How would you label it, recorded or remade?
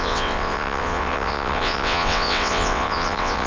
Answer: remade